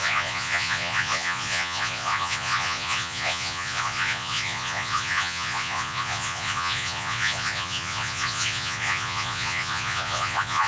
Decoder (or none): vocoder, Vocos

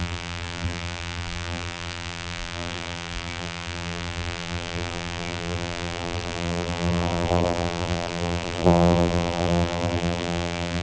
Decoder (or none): vocoder, BigVGAN v2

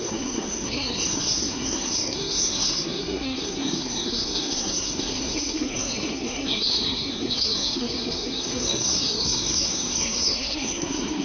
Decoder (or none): codec, SNAC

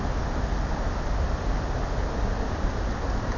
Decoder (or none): none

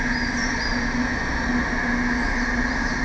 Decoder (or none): none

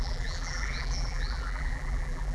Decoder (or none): vocoder, BigVGAN v2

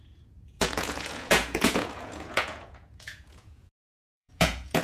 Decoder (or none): vocoder, Vocos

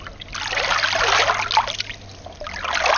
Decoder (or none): none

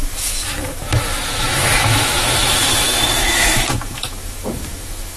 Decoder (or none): autoencoder, DAC-VAE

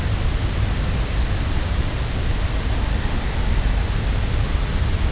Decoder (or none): none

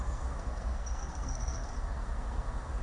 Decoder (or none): codec, SNAC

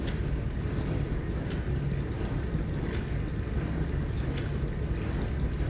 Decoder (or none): none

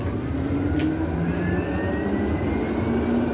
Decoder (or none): none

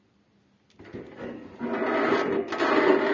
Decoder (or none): none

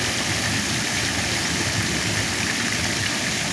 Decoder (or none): none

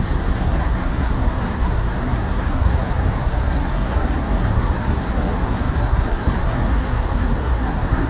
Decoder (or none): codec, SNAC